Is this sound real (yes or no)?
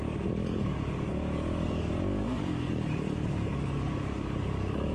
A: no